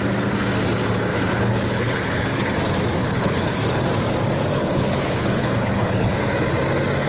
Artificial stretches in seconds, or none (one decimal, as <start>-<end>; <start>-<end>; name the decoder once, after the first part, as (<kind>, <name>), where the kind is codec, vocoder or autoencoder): 1.1-2.6 (codec, HILCodec); 3.0-3.6; 4.5-6.2